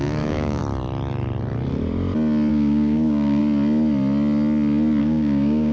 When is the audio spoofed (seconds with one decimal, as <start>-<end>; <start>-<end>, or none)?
0.0-0.6; 2.5-3.4; 5.0-5.7